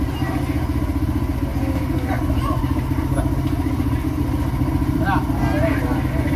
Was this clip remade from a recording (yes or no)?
no